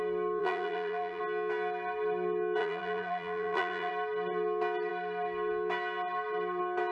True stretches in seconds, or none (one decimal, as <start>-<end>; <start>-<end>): 0.0-0.4; 1.2-2.6; 3.9-6.9